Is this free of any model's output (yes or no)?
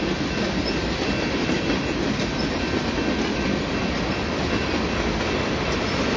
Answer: yes